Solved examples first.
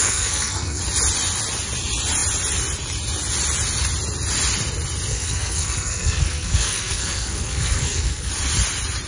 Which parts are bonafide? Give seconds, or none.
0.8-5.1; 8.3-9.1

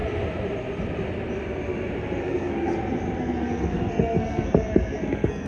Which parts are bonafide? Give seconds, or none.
0.0-2.2; 2.7-3.2